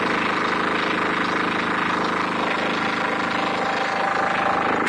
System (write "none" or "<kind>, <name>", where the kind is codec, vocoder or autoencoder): none